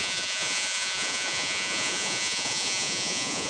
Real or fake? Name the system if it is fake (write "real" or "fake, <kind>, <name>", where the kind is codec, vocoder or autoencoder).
fake, vocoder, Vocos